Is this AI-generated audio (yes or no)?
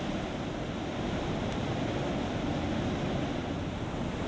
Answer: no